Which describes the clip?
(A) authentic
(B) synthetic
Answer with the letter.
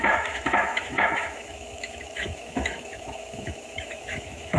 B